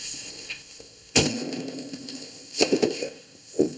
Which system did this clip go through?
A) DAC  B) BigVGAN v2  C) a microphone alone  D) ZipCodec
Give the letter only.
D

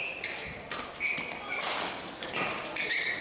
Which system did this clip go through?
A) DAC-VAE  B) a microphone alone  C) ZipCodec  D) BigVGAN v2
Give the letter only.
B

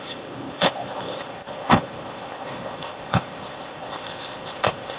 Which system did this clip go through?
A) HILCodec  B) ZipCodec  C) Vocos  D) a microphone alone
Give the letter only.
B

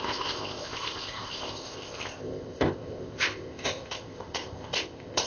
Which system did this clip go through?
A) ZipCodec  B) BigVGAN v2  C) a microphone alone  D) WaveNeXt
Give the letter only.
A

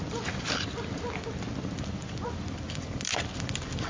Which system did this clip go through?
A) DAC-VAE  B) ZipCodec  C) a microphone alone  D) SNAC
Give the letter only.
C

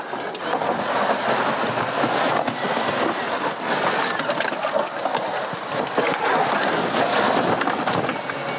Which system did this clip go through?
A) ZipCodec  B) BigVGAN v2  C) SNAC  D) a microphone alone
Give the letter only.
D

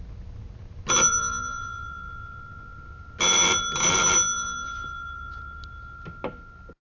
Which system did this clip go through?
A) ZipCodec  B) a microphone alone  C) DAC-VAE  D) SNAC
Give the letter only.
B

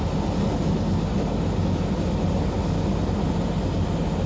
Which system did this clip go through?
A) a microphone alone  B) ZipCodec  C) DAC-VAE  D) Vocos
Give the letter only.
A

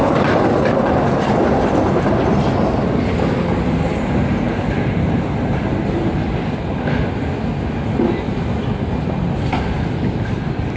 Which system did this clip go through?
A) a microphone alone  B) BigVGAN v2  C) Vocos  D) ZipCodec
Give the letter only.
A